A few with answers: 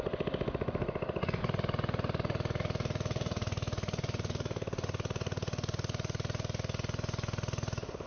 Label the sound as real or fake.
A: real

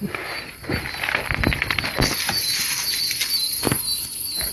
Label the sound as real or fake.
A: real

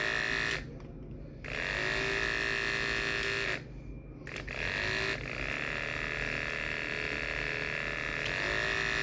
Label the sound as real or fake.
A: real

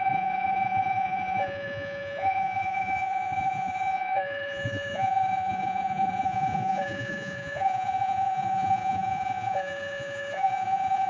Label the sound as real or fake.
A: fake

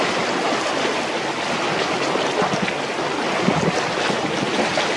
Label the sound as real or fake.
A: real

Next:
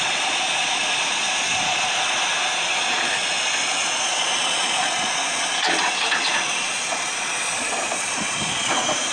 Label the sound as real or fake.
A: fake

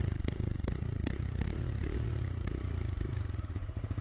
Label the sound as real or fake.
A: fake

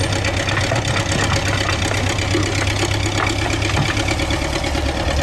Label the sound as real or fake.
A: real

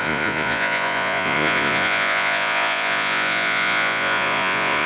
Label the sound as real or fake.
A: fake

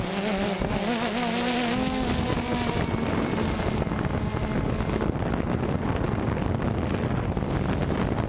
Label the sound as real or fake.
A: real